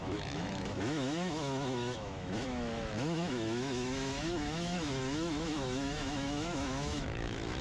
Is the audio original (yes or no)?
no